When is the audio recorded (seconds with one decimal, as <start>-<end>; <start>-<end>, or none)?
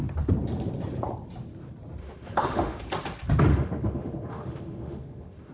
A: 0.0-2.0; 2.8-3.5